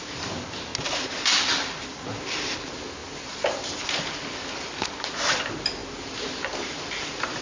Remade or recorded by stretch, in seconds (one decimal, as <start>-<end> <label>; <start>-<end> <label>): 0.0-0.7 remade; 0.7-1.4 recorded; 1.4-7.4 remade